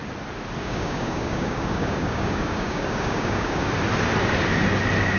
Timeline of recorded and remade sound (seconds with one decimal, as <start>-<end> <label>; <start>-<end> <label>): 0.0-0.6 recorded; 0.6-3.7 remade; 3.7-5.2 recorded